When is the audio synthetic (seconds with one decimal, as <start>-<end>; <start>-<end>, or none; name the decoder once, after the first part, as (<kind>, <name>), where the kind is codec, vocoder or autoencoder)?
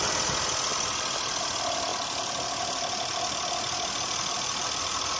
0.7-1.4 (vocoder, BigVGAN v2); 1.9-5.2